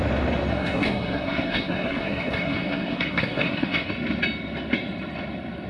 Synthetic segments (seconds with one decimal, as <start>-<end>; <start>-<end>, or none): 0.5-3.9